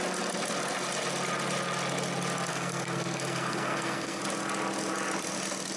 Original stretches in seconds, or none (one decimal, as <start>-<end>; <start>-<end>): 0.0-2.5; 4.2-5.8